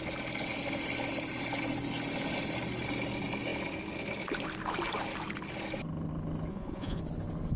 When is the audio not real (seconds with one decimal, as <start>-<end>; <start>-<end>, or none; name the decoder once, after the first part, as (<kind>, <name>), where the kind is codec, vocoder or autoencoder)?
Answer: 6.5-7.0 (vocoder, Vocos)